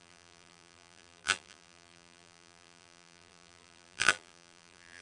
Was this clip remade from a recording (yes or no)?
yes